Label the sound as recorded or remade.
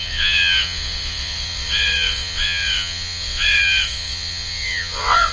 remade